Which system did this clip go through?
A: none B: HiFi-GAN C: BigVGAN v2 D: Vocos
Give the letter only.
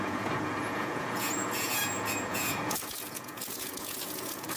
D